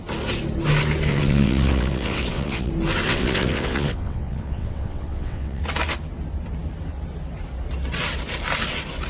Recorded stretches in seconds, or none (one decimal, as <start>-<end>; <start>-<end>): 0.0-1.1; 2.7-3.1; 5.6-9.1